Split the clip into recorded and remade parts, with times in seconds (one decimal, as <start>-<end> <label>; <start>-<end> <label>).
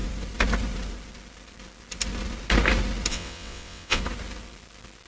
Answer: 0.0-3.1 recorded; 3.1-4.0 remade; 4.0-5.1 recorded